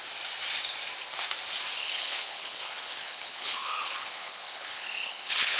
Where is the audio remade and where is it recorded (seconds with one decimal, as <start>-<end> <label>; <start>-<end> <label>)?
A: 0.0-1.8 recorded; 1.8-5.6 remade